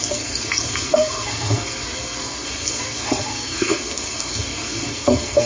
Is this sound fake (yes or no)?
yes